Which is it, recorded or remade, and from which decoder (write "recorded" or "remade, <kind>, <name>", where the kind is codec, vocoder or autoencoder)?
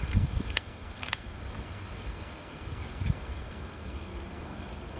remade, codec, SNAC